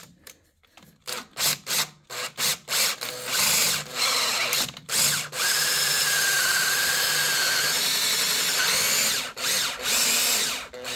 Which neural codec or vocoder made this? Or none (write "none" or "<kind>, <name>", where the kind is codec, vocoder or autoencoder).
none